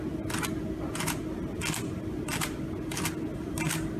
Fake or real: real